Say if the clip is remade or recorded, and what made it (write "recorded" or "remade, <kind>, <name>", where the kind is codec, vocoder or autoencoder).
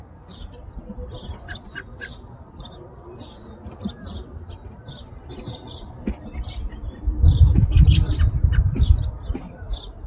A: remade, vocoder, BigVGAN v2